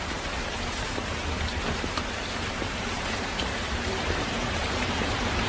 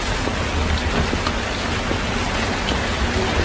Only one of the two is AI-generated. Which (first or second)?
first